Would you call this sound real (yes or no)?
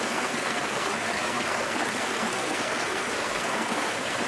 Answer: no